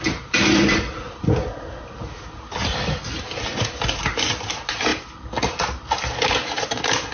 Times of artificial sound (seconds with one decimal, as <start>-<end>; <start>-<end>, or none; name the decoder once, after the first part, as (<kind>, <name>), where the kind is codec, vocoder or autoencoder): none